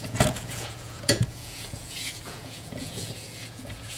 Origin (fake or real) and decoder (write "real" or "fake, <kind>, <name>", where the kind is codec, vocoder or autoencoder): fake, vocoder, Vocos